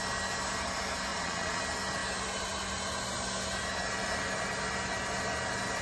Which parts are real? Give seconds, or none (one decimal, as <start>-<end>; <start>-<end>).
0.0-1.1; 1.6-5.8